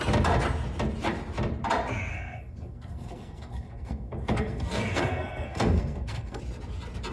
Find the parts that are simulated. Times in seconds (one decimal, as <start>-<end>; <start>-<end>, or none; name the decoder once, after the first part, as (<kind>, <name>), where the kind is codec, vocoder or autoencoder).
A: 2.1-6.4 (codec, SNAC)